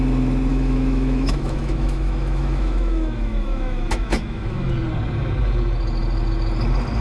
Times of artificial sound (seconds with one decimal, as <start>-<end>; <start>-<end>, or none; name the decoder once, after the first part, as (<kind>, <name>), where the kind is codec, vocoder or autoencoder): 0.5-4.7 (autoencoder, DAC-VAE)